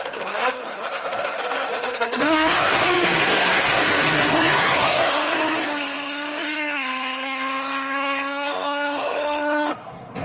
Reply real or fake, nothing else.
fake